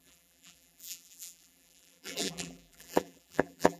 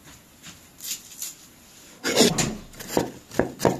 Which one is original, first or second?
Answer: second